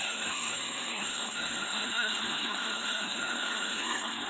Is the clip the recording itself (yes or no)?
no